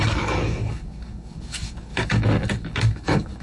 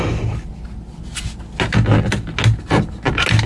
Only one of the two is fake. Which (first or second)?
first